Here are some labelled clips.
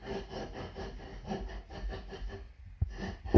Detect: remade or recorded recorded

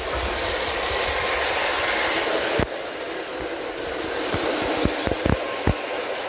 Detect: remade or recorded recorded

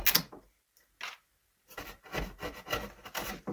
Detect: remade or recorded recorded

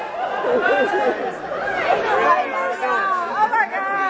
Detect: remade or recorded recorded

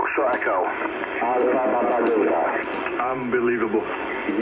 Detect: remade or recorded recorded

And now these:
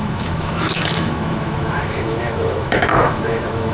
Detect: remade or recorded remade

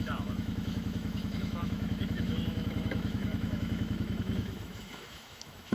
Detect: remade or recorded remade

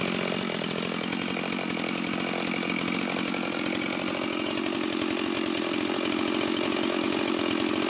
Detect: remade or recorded recorded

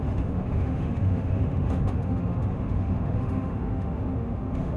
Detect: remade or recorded remade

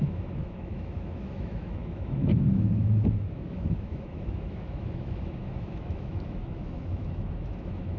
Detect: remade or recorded remade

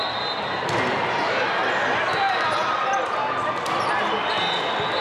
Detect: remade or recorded recorded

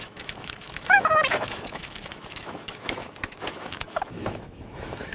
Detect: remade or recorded remade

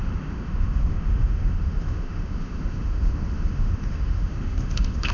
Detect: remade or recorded remade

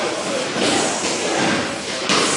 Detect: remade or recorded recorded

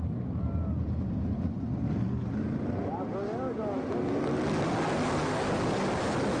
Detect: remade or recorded recorded